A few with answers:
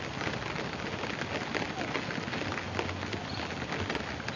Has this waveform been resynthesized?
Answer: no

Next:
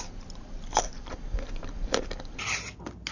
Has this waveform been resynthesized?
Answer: no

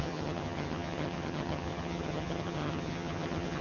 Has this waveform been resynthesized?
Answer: yes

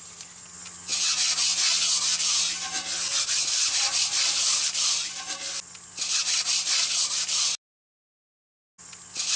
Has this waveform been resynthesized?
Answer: no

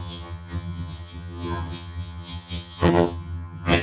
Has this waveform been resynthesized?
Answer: yes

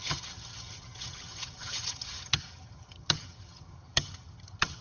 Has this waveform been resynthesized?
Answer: yes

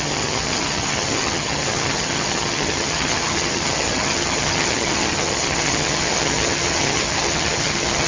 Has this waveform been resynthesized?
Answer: yes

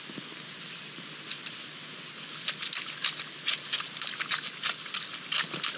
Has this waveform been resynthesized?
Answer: no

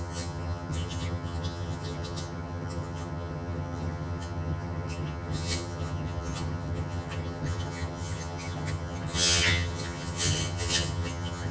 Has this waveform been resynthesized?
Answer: yes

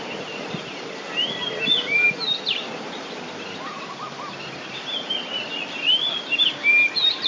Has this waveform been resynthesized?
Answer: no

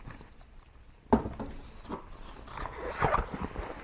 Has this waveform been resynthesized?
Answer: no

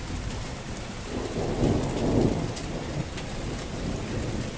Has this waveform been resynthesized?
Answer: no